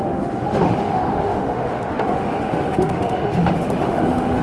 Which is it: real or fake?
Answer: fake